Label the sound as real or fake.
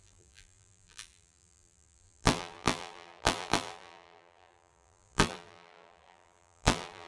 fake